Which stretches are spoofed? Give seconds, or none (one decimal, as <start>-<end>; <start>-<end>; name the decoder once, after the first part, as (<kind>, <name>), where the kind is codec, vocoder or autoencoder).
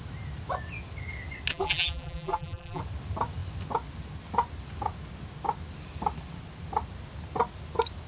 1.5-2.8 (vocoder, BigVGAN v2)